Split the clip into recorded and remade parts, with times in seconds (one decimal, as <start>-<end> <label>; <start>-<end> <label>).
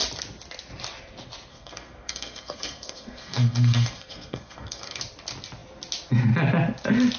0.0-1.5 recorded; 1.5-5.0 remade; 5.0-7.2 recorded